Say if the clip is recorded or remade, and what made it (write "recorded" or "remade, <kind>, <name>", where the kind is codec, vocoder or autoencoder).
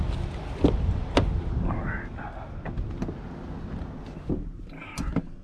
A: recorded